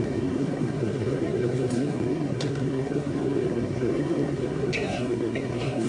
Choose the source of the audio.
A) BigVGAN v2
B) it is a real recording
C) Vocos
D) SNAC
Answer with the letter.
D